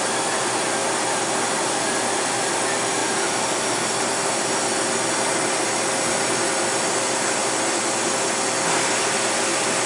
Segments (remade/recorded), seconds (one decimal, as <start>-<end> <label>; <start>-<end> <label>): 0.0-9.9 recorded